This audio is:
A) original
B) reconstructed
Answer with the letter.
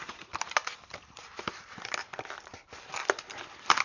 A